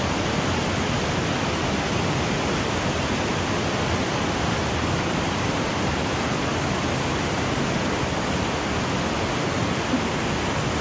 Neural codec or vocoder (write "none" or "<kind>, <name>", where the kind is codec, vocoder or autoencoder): none